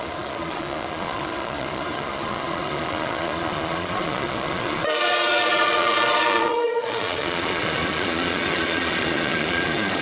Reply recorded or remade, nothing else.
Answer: remade